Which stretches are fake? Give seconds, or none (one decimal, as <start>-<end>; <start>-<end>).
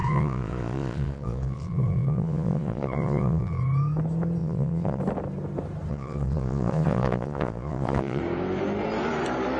0.0-3.6; 4.4-5.0; 5.9-8.2